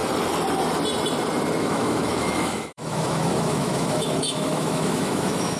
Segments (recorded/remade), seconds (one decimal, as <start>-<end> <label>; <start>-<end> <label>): 0.0-1.6 recorded; 1.6-5.6 remade